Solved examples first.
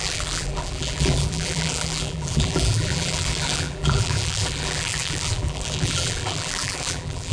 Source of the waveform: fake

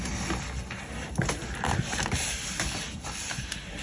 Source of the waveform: real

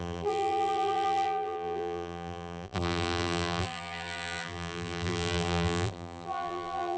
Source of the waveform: fake